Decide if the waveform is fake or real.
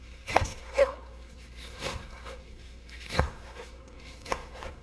fake